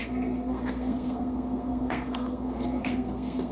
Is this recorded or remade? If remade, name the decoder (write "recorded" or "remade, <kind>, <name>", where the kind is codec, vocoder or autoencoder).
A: remade, codec, SNAC